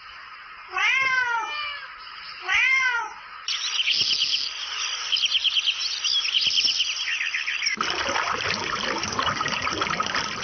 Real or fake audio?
real